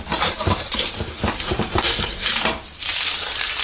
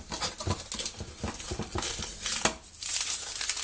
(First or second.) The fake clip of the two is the first